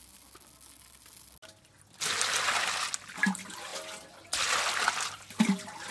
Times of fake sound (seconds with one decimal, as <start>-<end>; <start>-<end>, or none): none